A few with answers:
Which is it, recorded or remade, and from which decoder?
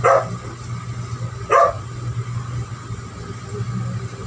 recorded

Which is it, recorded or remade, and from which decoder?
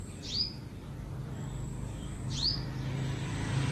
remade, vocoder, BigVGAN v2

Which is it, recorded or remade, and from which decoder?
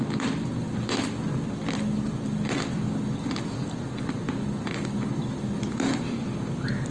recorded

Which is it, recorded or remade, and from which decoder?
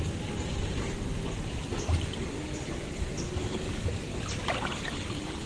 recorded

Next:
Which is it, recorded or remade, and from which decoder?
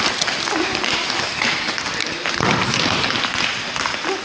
recorded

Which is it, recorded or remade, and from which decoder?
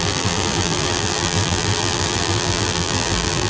remade, vocoder, BigVGAN v2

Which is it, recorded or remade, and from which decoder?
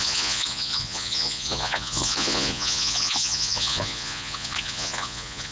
remade, vocoder, Vocos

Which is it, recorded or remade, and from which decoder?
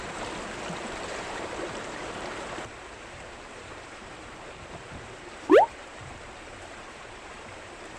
remade, vocoder, BigVGAN v2